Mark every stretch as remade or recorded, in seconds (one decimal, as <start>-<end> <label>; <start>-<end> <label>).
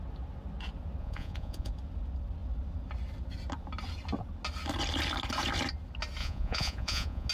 0.0-1.0 recorded; 1.0-1.7 remade; 1.7-6.2 recorded; 6.2-7.3 remade